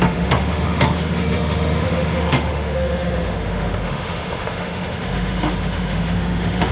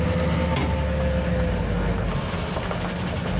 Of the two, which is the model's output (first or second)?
first